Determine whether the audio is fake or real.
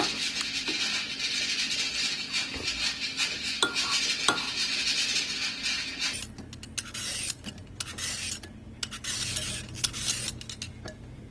real